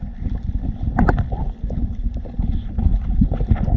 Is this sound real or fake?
fake